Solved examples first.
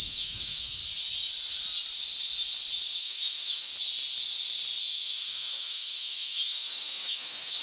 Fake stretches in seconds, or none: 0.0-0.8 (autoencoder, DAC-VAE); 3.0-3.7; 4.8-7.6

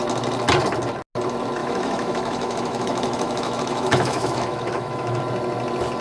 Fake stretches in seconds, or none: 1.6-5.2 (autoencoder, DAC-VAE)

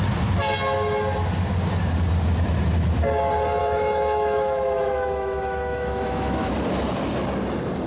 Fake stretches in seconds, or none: 3.6-6.5 (autoencoder, DAC-VAE)